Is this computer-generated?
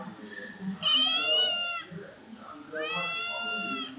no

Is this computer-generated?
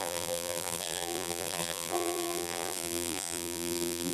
yes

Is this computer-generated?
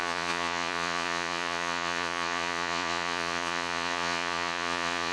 yes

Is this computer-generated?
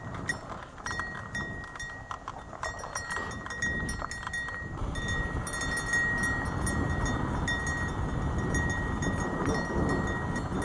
no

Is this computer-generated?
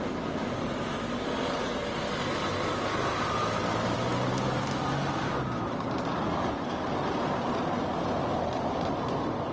no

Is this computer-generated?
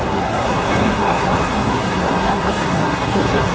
yes